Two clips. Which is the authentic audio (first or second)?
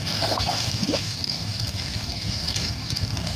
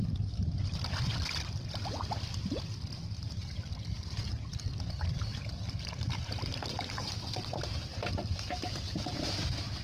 second